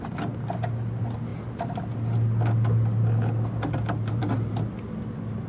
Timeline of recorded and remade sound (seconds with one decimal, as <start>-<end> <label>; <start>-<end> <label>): 0.0-5.5 recorded